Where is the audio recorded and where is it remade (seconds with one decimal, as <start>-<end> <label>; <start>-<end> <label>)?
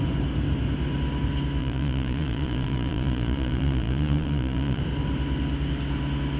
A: 0.0-1.6 recorded; 1.6-4.8 remade; 4.8-6.4 recorded